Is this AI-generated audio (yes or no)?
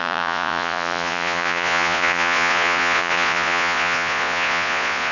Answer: yes